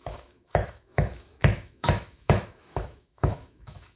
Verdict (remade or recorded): remade